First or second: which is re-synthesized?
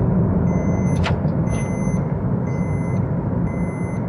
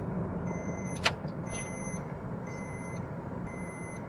second